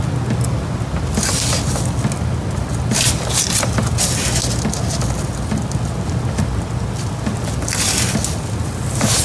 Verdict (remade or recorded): recorded